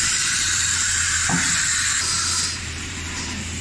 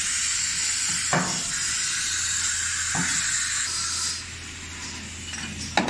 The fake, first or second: first